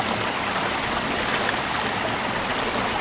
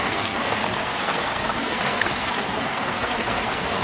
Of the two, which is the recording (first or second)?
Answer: first